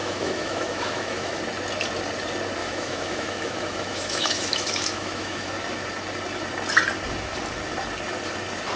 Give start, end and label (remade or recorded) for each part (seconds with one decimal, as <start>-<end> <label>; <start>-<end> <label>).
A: 0.0-1.4 remade; 1.4-2.6 recorded; 2.6-5.5 remade; 5.5-8.8 recorded